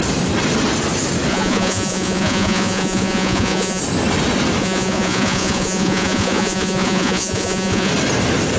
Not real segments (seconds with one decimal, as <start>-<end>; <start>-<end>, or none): 1.3-3.8; 4.6-7.9